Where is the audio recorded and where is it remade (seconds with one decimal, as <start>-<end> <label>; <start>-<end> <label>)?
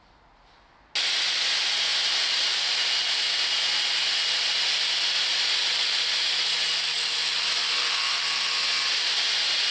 0.0-7.8 recorded; 7.8-8.5 remade; 8.5-9.7 recorded